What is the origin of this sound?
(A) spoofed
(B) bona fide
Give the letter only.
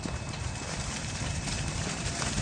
B